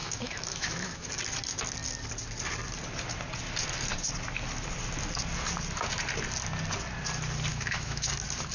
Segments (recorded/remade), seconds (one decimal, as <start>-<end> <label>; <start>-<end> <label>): 0.0-1.1 remade; 1.1-7.5 recorded; 7.5-8.1 remade; 8.1-8.5 recorded